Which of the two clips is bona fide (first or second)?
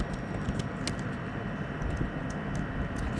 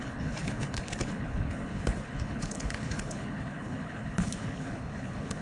first